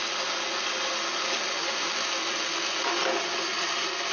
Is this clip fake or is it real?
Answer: real